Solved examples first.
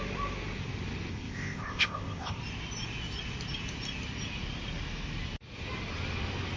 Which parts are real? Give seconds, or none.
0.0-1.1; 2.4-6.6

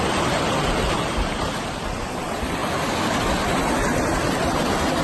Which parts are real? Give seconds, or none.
0.0-5.0